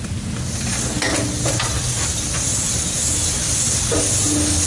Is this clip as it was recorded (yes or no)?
yes